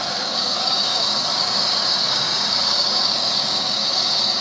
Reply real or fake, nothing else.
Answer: fake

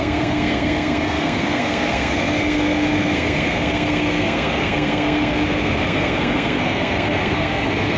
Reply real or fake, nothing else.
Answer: fake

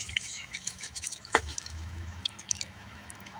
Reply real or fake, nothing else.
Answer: fake